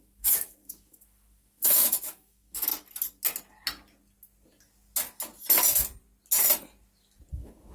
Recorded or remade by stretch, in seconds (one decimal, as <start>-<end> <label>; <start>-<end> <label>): 0.0-2.7 remade; 2.7-7.3 recorded; 7.3-7.7 remade